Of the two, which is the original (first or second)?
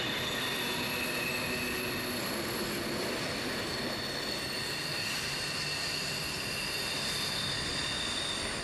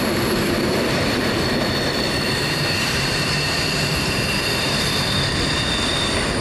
first